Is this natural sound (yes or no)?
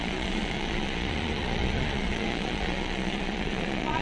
no